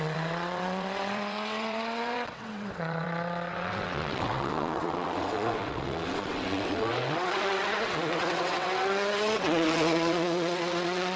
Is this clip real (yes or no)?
no